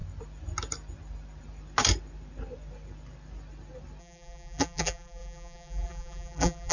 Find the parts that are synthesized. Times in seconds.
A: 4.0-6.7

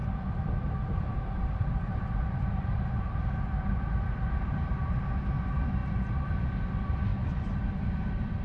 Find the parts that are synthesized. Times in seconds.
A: 0.0-4.7; 7.1-7.8

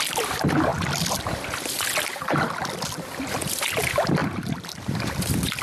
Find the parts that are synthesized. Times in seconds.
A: none

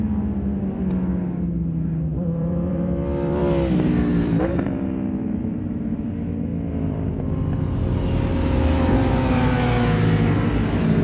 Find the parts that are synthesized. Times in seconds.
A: 2.1-3.4; 4.1-6.1; 6.5-7.1

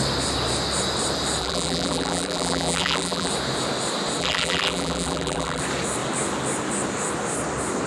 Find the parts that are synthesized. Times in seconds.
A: 1.4-3.3; 4.2-5.6

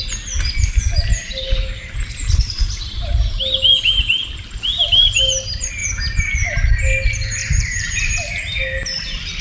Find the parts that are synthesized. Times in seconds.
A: 1.1-3.3; 5.8-6.6; 7.4-8.1

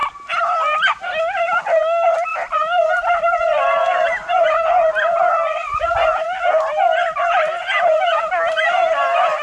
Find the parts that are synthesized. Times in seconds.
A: 2.3-6.6

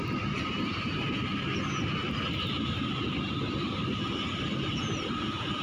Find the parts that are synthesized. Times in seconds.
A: 2.0-5.6